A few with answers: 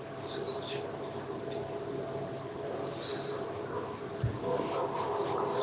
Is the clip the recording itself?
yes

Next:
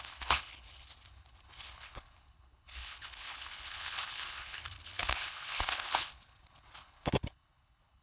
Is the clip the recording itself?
no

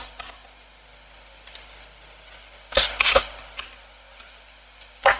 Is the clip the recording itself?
yes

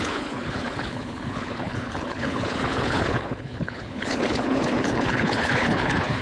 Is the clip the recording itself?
no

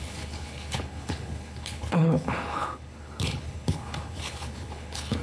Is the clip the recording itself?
no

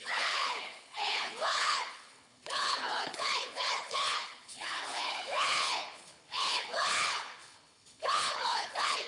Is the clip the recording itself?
no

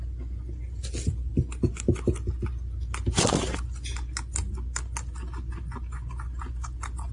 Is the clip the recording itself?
yes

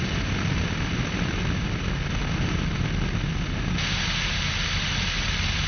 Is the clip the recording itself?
yes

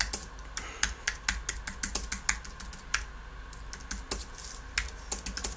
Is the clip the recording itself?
yes